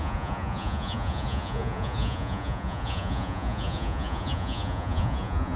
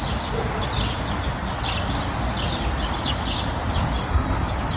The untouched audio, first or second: second